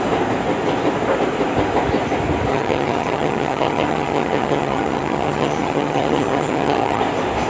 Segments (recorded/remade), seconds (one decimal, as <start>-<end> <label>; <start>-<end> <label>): 0.0-2.5 recorded; 2.5-7.0 remade; 7.0-7.5 recorded